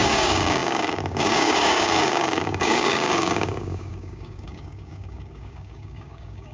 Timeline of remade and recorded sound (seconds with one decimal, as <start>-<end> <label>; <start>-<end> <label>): 0.0-6.5 remade